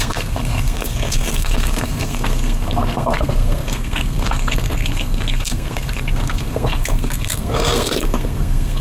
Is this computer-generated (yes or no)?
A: yes